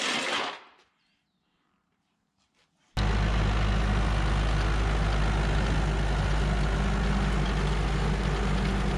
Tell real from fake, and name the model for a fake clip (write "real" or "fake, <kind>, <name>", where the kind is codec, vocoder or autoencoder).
real